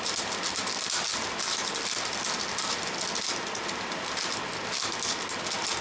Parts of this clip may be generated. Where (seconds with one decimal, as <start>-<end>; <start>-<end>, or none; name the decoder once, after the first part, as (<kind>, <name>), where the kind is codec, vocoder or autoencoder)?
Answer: none